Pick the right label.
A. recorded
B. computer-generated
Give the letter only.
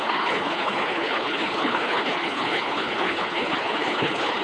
B